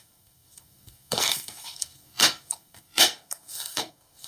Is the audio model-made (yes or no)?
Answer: yes